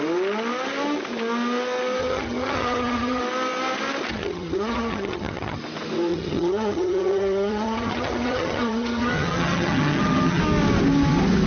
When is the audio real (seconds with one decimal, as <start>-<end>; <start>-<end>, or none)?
0.0-2.0; 3.2-4.1; 5.6-6.1; 10.4-11.5